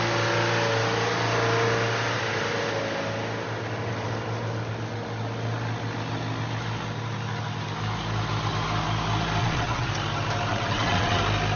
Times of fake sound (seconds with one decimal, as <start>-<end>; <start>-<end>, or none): 9.4-9.9; 10.5-11.2